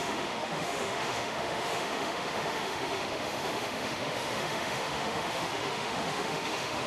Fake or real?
fake